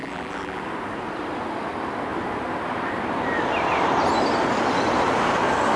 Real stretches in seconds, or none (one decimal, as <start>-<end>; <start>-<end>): 0.6-5.8